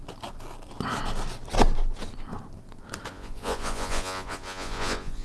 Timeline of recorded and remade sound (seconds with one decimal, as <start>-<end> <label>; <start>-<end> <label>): 0.0-3.1 recorded; 3.1-5.2 remade

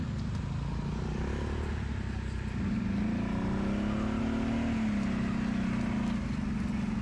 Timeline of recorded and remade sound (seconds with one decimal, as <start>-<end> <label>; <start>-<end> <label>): 0.0-7.0 recorded

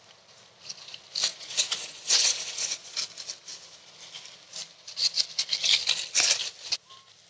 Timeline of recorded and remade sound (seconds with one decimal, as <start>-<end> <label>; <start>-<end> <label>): 0.0-1.3 recorded; 1.3-3.0 remade; 3.0-7.3 recorded

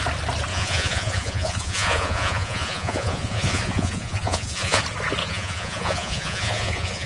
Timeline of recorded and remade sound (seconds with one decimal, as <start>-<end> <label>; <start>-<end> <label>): 0.0-0.5 recorded; 0.5-4.8 remade; 4.8-5.2 recorded; 5.2-7.1 remade

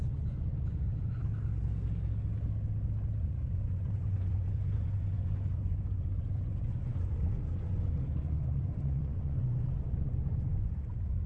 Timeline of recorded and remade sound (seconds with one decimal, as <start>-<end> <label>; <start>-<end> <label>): 0.0-1.2 remade; 1.2-3.2 recorded; 3.2-11.3 remade

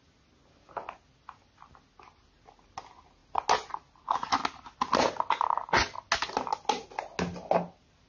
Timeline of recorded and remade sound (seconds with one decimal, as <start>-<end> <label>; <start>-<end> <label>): 0.0-8.1 recorded